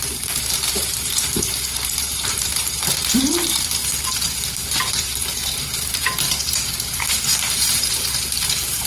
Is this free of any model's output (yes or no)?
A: no